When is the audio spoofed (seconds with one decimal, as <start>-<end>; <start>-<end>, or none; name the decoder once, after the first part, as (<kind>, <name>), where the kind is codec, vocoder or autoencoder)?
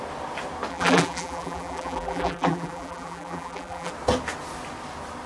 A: 0.7-3.9 (vocoder, BigVGAN v2)